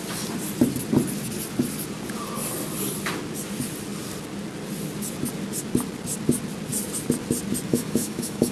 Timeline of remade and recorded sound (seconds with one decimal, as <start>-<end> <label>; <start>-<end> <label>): 0.0-7.7 recorded; 7.7-8.5 remade